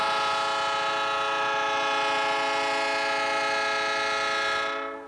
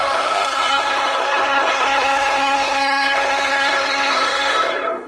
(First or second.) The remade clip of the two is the second